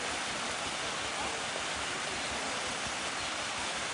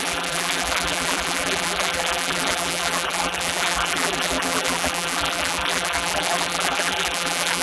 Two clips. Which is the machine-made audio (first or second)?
second